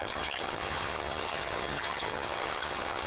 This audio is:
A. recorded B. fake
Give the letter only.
B